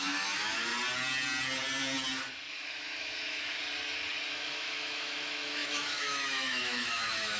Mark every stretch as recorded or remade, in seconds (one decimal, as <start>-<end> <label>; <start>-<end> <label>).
0.0-0.7 remade; 0.7-2.5 recorded; 2.5-3.6 remade; 3.6-4.3 recorded; 4.3-7.4 remade